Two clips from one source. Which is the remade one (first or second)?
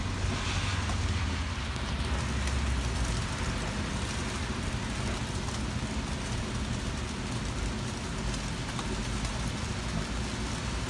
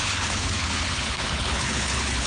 second